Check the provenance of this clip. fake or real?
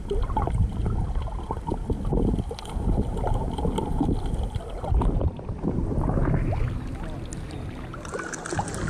real